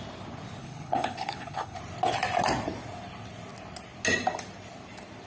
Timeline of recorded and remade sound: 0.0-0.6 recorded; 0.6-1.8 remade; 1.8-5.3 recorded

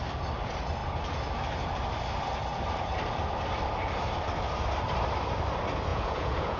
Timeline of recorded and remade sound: 0.0-5.9 recorded; 5.9-6.6 remade

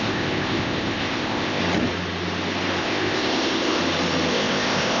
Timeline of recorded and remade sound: 0.0-1.6 remade; 1.6-2.8 recorded; 2.8-3.8 remade; 3.8-4.3 recorded; 4.3-5.0 remade

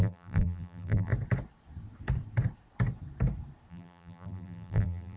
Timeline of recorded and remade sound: 0.0-1.1 remade; 1.1-3.7 recorded; 3.7-5.2 remade

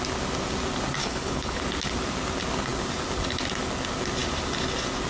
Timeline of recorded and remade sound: 0.0-1.0 recorded; 1.0-1.6 remade; 1.6-5.1 recorded